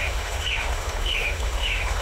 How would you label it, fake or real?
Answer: fake